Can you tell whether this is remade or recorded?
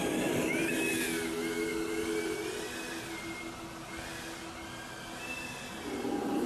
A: recorded